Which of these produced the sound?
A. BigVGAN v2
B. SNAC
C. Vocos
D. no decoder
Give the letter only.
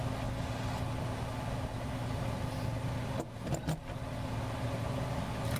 D